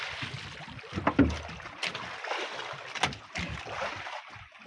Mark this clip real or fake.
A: real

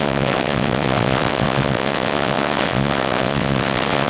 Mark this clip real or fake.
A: fake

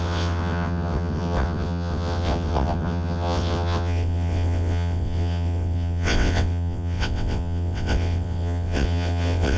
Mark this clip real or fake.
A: fake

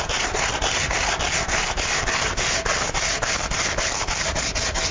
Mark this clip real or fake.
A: real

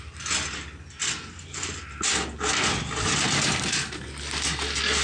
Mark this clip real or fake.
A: real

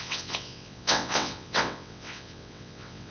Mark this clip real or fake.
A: fake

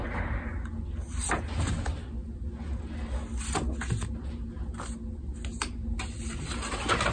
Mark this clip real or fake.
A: real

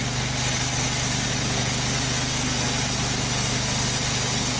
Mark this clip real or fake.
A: real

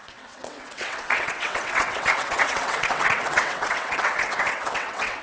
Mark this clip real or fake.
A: fake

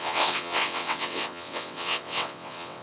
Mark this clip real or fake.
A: fake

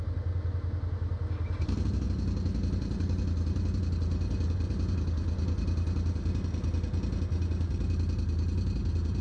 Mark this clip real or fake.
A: real